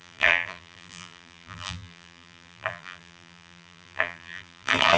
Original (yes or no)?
no